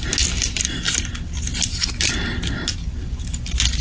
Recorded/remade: recorded